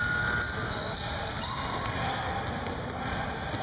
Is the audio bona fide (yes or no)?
yes